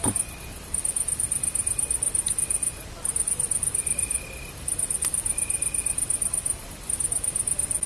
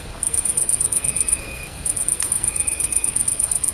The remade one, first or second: second